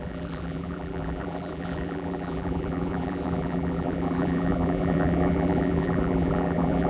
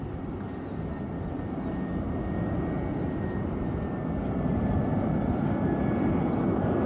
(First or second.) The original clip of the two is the second